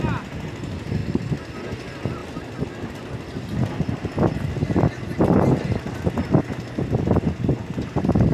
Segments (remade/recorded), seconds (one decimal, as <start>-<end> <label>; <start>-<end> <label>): 0.0-8.3 recorded